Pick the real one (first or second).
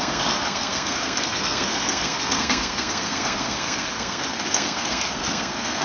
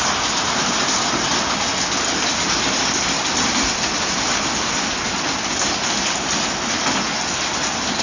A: second